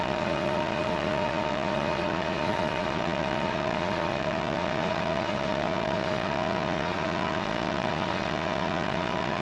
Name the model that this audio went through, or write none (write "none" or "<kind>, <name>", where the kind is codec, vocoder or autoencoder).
vocoder, Vocos